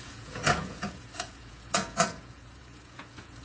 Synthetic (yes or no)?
yes